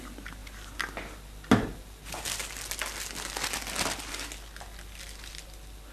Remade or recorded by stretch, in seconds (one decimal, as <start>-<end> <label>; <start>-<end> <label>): 0.0-5.9 recorded